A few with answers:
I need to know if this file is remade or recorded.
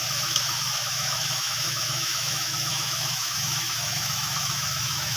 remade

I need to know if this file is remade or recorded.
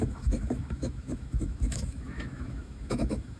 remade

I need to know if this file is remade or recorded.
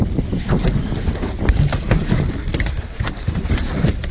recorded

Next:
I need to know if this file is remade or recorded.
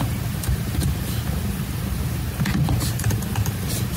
recorded